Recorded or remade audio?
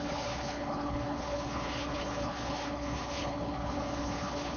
remade